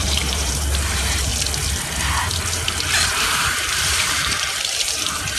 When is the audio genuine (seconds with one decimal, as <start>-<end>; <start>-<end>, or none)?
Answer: 1.3-2.9